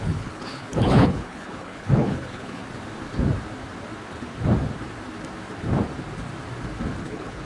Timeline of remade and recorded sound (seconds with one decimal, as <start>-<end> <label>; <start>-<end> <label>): 0.0-2.6 remade; 2.6-7.0 recorded; 7.0-7.4 remade